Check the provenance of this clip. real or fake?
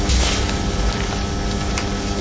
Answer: real